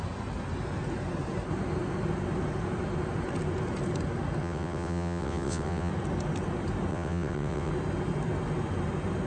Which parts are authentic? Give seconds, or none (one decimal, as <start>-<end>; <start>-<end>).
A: 0.0-4.4; 5.9-6.9; 7.7-9.3